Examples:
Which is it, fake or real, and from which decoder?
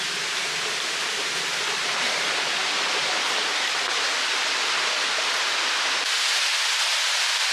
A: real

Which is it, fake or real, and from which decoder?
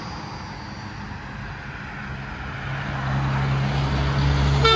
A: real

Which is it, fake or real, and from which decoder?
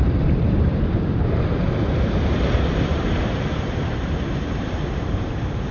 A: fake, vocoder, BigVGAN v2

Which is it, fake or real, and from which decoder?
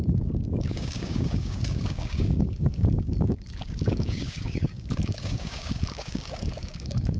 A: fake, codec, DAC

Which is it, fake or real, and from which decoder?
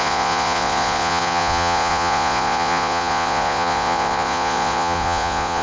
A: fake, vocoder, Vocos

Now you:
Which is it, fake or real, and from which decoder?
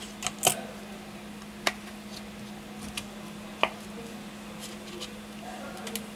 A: real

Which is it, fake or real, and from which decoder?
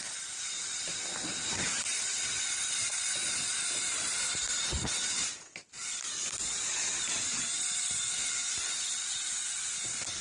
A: real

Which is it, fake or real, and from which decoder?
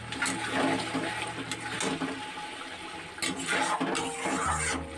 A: real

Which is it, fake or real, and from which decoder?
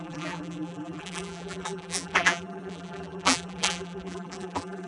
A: fake, vocoder, BigVGAN v2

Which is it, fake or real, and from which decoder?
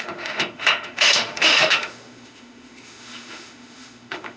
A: fake, autoencoder, DAC-VAE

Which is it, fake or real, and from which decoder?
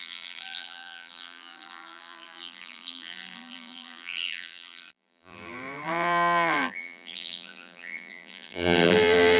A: fake, vocoder, BigVGAN v2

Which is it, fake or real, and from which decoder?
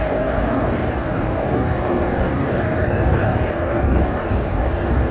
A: fake, codec, DAC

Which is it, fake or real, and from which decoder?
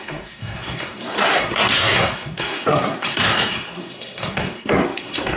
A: fake, codec, SNAC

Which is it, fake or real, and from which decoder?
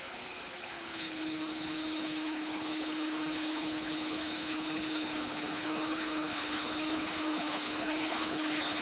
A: fake, codec, HILCodec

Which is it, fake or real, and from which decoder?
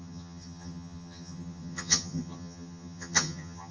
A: fake, vocoder, HiFi-GAN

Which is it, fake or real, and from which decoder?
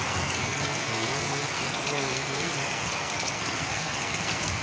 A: fake, codec, SNAC